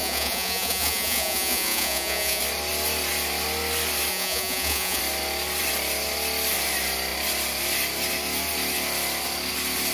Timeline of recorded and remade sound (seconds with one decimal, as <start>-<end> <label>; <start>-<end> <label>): 0.0-2.4 remade; 2.4-4.1 recorded; 4.1-5.0 remade; 5.0-9.9 recorded